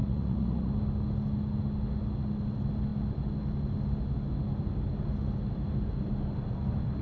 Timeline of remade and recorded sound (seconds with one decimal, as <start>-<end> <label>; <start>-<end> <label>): 0.0-0.7 remade; 0.7-7.0 recorded